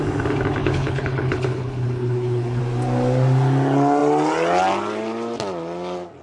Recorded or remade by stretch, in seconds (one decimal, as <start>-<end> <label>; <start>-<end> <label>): 0.0-0.6 recorded; 0.6-2.6 remade; 2.6-6.2 recorded